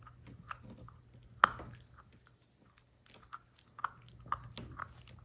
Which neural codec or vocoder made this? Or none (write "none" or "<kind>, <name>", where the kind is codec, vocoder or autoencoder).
none